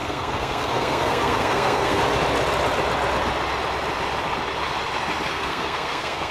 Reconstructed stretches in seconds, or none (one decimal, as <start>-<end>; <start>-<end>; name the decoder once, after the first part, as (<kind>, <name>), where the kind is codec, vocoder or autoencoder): 0.0-2.0 (codec, SNAC); 5.3-6.3